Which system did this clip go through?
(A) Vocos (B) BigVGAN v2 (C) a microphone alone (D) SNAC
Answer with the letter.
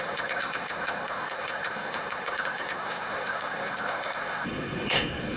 D